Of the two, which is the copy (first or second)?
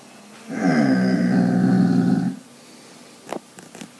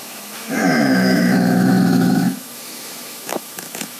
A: second